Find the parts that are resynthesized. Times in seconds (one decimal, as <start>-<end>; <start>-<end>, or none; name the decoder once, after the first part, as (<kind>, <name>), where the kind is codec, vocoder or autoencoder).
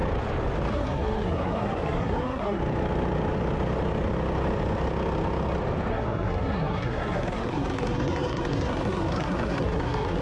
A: 0.7-2.6 (codec, SNAC); 5.9-10.2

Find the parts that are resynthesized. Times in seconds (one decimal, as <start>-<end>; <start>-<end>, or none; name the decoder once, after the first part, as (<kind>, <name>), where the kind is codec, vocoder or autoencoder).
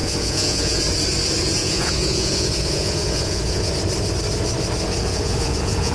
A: 0.0-0.8 (vocoder, Vocos); 1.6-3.7; 5.1-5.9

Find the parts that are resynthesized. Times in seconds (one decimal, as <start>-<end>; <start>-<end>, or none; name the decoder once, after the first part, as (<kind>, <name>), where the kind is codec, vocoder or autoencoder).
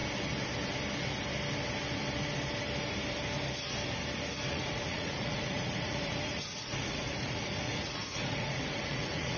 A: 4.5-9.4 (vocoder, Vocos)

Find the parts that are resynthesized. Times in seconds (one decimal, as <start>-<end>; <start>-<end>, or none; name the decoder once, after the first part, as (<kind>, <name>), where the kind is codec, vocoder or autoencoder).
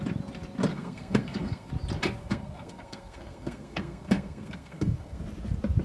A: 0.7-1.7 (codec, SNAC); 2.2-5.2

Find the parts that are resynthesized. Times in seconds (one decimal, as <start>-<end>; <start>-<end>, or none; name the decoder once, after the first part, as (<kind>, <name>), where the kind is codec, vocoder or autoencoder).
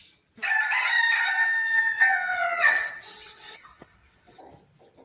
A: 1.4-4.4 (vocoder, WaveNeXt)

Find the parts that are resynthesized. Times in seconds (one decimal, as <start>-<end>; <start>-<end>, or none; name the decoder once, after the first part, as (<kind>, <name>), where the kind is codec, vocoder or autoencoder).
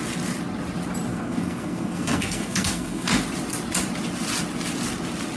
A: 1.1-3.2 (codec, SNAC)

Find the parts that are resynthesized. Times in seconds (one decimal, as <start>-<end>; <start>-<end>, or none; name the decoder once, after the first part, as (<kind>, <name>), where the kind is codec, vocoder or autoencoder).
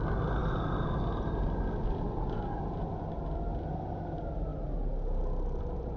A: none